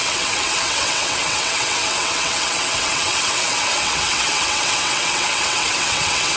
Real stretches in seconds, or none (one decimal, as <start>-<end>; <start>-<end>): none